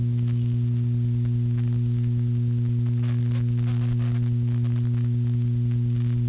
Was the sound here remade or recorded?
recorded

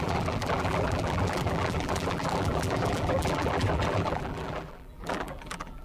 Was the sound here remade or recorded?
remade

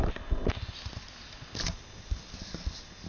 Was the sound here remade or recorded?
recorded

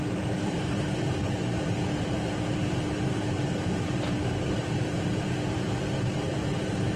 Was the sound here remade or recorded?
remade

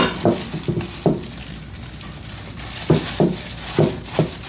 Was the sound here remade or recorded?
recorded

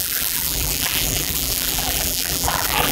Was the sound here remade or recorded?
remade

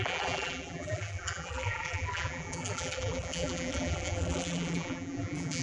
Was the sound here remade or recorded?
remade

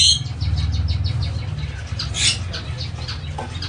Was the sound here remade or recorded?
recorded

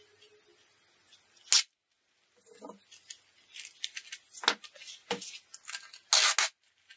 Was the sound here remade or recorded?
recorded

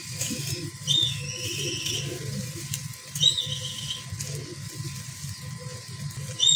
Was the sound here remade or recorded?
recorded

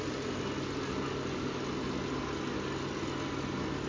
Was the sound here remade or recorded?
recorded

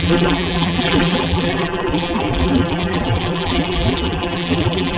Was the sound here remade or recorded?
remade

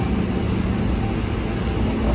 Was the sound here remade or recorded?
recorded